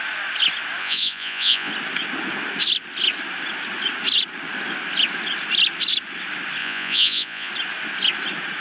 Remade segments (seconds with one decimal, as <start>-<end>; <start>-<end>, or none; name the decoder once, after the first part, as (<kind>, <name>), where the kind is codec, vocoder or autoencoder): 0.8-1.7 (vocoder, Vocos); 6.6-7.5

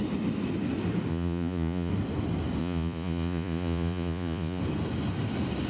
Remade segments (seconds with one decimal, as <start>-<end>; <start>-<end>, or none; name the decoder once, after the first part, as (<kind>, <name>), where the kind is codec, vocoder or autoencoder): 1.1-1.9 (vocoder, Vocos); 2.6-4.6

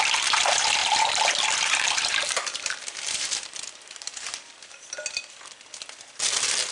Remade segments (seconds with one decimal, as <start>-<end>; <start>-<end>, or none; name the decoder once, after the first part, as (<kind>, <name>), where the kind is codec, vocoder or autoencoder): 0.8-4.8 (vocoder, BigVGAN v2)

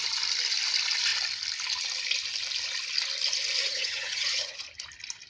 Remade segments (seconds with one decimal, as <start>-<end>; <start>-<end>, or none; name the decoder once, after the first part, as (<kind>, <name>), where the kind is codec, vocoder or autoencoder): 3.6-4.6 (vocoder, HiFi-GAN)